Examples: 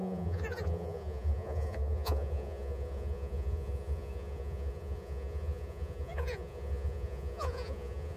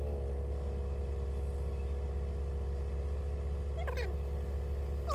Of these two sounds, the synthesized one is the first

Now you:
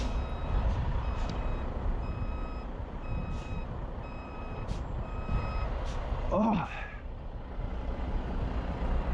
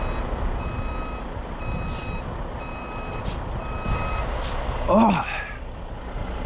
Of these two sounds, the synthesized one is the first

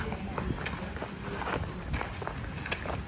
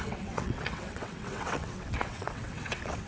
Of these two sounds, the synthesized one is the second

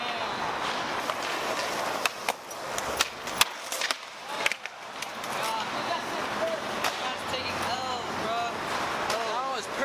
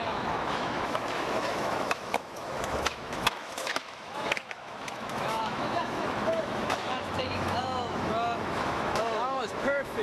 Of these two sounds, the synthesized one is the second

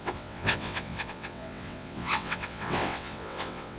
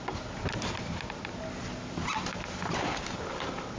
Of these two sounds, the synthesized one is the first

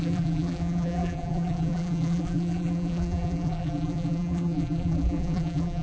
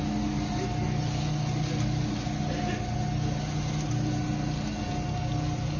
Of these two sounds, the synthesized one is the first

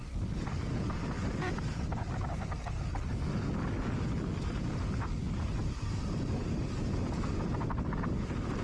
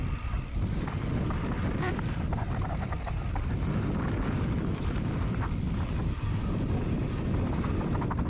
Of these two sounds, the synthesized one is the second